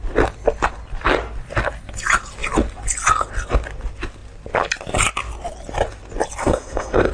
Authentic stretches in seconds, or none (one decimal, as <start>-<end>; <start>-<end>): 0.0-6.4